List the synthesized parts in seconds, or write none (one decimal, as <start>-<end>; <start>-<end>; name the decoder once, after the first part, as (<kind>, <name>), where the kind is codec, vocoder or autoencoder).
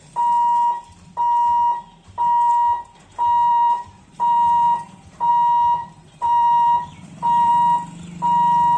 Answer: 3.5-5.3 (vocoder, BigVGAN v2); 5.8-7.5